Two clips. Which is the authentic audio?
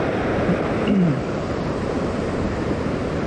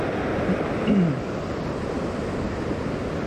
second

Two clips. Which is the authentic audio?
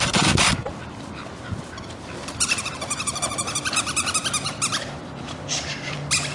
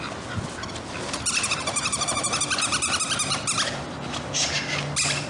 second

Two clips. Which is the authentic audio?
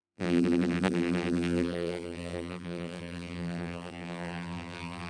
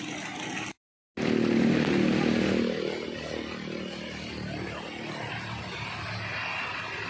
second